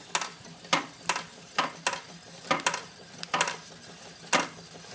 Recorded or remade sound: recorded